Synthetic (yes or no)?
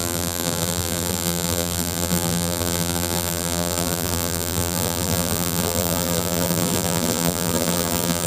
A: yes